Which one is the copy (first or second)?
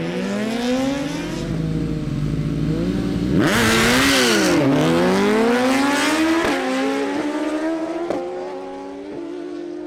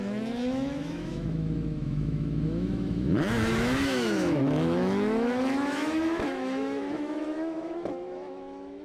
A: second